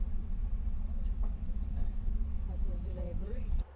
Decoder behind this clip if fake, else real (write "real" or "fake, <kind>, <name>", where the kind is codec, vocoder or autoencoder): fake, vocoder, WaveNeXt